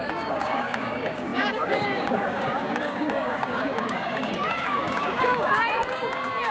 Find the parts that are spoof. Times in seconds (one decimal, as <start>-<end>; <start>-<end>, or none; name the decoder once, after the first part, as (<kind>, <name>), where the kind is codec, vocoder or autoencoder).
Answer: 0.0-6.5 (codec, DAC)